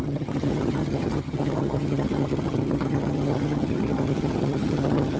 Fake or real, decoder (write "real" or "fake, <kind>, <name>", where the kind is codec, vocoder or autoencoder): fake, vocoder, HiFi-GAN